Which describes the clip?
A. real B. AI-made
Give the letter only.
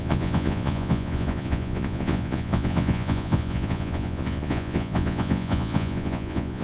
B